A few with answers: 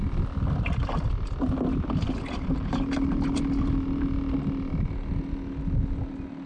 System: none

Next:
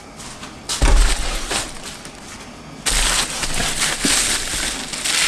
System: none